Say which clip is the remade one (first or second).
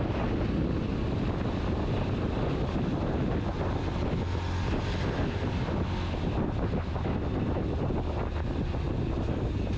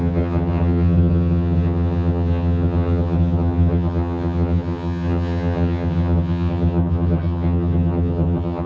second